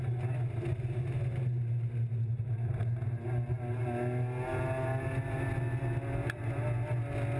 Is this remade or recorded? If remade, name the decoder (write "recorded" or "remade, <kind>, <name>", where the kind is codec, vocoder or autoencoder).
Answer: recorded